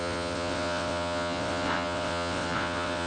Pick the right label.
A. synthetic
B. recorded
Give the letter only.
A